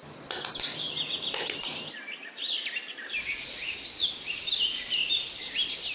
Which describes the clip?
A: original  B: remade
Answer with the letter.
A